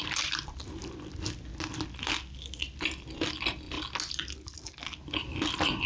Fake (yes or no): no